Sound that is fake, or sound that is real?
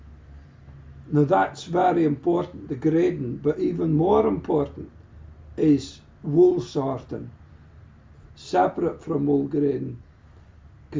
real